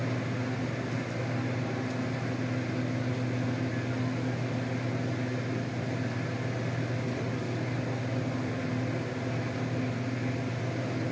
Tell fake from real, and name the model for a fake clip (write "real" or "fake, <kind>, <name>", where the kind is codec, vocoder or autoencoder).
real